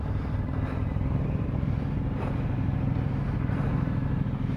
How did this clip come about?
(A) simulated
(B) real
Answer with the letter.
A